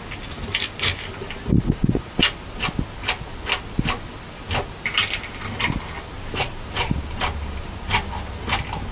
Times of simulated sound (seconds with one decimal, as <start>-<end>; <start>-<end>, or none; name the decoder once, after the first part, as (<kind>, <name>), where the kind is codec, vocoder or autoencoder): 1.5-2.2 (vocoder, Vocos)